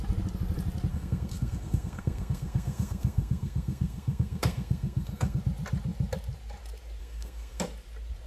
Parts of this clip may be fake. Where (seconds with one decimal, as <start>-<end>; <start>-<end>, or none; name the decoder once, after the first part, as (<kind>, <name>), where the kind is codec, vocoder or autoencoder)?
0.9-5.4 (codec, SNAC); 7.0-7.6